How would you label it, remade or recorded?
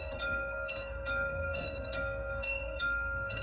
remade